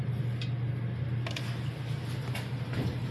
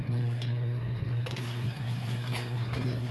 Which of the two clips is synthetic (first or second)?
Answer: second